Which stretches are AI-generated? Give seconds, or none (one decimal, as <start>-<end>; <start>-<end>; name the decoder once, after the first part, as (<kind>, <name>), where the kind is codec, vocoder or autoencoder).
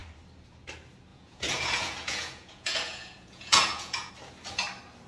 1.1-4.1 (vocoder, Vocos)